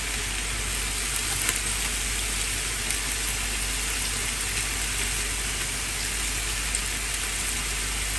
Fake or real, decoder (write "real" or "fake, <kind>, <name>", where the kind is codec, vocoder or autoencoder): real